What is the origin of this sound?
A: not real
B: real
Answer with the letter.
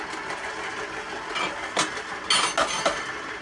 B